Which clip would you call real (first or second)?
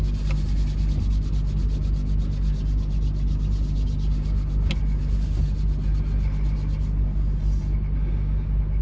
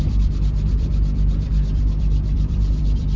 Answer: first